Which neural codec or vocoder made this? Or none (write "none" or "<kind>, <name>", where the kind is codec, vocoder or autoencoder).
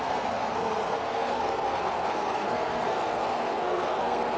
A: codec, SNAC